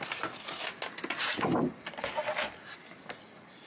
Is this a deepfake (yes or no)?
no